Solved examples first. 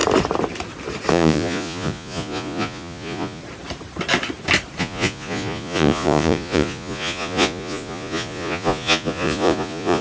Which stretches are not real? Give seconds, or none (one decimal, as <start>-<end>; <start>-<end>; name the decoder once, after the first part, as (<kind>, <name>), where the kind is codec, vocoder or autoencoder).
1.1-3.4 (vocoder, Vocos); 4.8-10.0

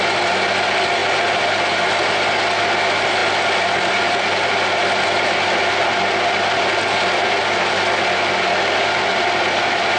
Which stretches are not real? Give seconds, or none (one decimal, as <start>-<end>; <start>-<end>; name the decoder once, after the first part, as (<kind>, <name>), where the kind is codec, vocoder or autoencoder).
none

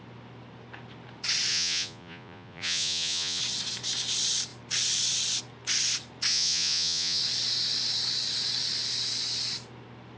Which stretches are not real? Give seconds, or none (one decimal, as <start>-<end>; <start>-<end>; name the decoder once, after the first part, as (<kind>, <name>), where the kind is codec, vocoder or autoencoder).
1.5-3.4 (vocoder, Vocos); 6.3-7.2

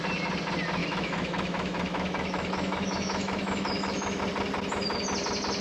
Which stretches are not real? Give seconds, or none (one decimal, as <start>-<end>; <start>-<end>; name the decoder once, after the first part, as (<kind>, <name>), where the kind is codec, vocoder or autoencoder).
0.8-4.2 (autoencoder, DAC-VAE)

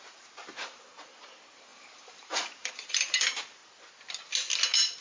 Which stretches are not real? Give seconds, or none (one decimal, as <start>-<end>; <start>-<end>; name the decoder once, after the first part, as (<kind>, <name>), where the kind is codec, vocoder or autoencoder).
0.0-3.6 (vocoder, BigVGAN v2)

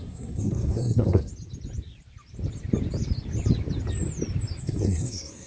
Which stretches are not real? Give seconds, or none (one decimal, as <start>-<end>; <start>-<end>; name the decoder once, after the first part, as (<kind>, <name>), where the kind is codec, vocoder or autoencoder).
0.0-1.3 (codec, SNAC); 4.6-5.5